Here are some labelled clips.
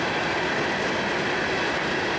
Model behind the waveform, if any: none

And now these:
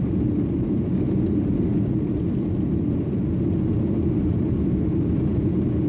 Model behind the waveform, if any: none